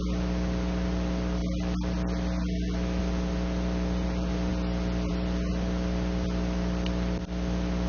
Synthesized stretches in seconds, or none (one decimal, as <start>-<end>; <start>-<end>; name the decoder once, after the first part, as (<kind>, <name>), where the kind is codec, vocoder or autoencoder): none